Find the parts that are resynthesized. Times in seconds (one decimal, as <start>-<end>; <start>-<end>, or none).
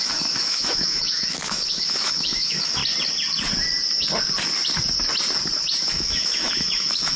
0.0-2.8; 5.9-7.2